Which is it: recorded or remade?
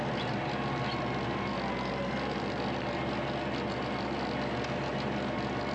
recorded